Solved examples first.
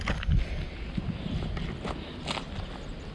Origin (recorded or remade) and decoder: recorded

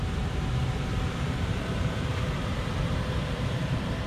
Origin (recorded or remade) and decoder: remade, vocoder, BigVGAN v2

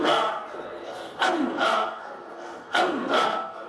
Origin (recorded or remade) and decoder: remade, codec, SNAC